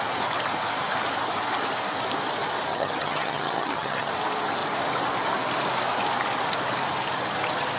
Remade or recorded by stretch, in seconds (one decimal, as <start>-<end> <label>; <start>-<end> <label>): 0.0-2.7 recorded; 2.7-4.1 remade; 4.1-7.8 recorded